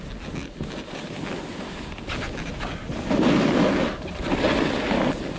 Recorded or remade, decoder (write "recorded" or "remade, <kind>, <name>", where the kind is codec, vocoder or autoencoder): recorded